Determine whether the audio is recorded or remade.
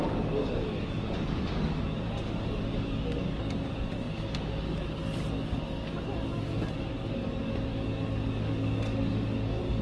remade